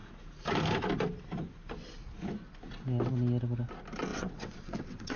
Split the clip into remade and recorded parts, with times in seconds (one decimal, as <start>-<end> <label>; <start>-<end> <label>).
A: 0.0-4.1 recorded; 4.1-5.2 remade